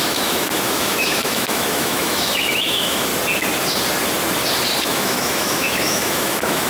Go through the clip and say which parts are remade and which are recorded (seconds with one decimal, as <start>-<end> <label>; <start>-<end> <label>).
0.0-3.1 remade; 3.1-4.8 recorded; 4.8-6.7 remade